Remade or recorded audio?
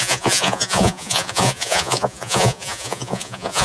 remade